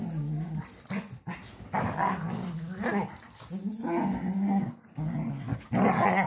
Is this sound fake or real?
real